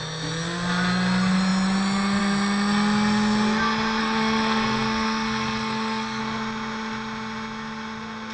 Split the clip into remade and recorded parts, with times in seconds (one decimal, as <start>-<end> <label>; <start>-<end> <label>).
0.0-4.0 recorded; 4.0-6.2 remade; 6.2-8.3 recorded